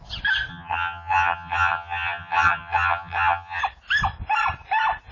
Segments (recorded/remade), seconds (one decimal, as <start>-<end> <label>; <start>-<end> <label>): 0.0-0.5 recorded; 0.5-3.6 remade; 3.6-5.1 recorded